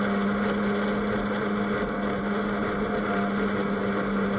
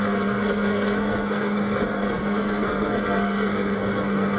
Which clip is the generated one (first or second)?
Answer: second